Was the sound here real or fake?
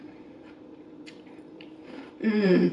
fake